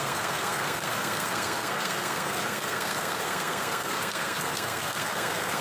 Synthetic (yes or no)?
yes